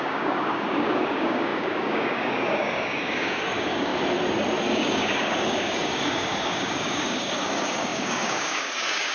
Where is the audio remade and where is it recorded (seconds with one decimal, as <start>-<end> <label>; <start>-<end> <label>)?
0.0-3.9 remade; 3.9-4.7 recorded; 4.7-9.1 remade

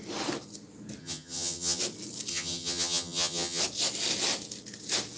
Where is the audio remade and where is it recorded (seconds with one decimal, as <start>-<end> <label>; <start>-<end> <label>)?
0.0-1.0 recorded; 1.0-1.8 remade; 1.8-2.3 recorded; 2.3-3.6 remade; 3.6-5.2 recorded

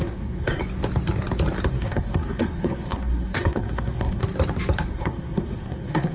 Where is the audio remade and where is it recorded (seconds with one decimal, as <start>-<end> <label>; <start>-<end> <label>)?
0.0-0.6 remade; 0.6-1.7 recorded; 1.7-4.2 remade; 4.2-4.9 recorded; 4.9-6.1 remade

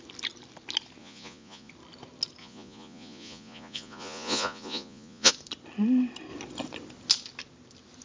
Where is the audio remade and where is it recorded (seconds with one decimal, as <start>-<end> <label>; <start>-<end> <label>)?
0.0-1.0 recorded; 1.0-1.7 remade; 1.7-2.4 recorded; 2.4-5.3 remade; 5.3-8.0 recorded

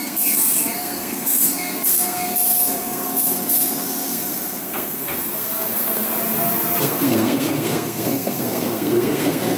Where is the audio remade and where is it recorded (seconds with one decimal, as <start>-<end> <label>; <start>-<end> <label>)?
0.0-6.1 remade; 6.1-6.8 recorded; 6.8-9.6 remade

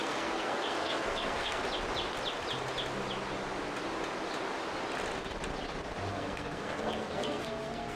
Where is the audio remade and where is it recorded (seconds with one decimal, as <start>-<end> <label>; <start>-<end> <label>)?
0.0-1.6 remade; 1.6-6.1 recorded; 6.1-8.0 remade

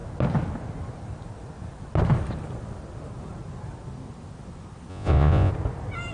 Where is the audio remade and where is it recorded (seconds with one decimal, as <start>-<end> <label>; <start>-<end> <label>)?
0.0-4.9 recorded; 4.9-5.5 remade; 5.5-6.1 recorded

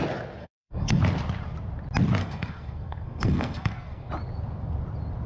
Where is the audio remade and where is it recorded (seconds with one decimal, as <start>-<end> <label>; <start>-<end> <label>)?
0.0-0.4 recorded; 0.4-1.0 remade; 1.0-2.2 recorded; 2.2-4.1 remade; 4.1-5.3 recorded